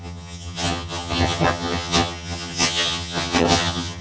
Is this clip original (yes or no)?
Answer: no